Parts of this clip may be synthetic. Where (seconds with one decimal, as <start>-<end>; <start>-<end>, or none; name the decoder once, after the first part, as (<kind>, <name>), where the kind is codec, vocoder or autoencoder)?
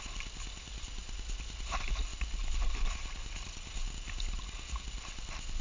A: none